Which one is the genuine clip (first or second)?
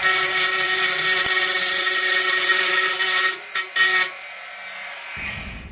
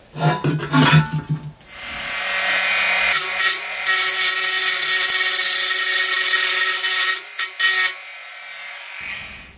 second